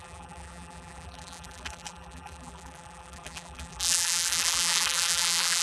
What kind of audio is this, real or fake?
fake